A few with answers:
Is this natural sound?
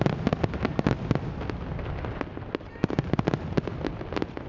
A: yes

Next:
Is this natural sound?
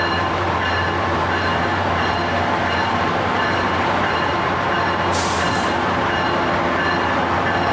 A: no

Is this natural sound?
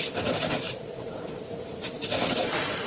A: no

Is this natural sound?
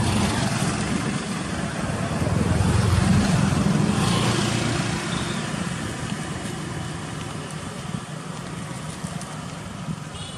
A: yes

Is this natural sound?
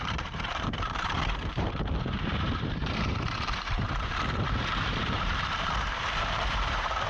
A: no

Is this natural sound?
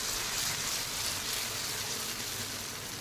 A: no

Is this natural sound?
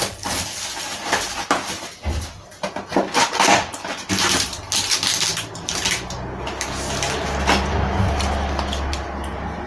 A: yes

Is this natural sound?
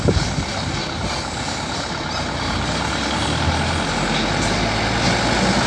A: yes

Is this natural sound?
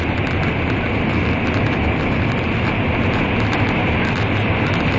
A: yes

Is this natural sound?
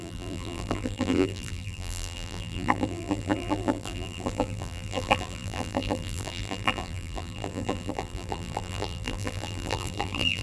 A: no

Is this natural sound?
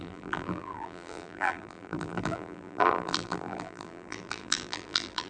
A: no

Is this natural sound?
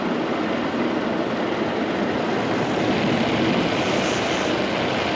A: yes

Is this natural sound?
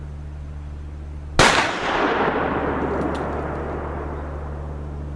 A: yes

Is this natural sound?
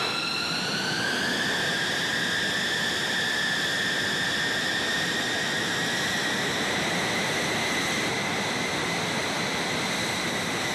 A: yes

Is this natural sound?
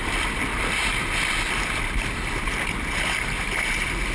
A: yes